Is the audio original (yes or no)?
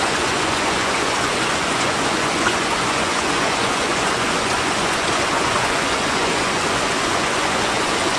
no